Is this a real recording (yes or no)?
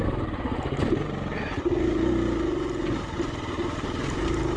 yes